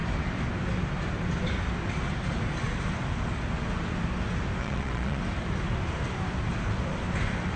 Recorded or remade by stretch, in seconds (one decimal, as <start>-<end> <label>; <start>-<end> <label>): 0.0-4.6 recorded; 4.6-5.2 remade; 5.2-7.6 recorded